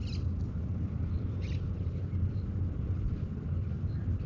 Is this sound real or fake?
real